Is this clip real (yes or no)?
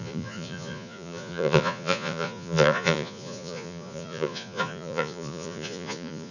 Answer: no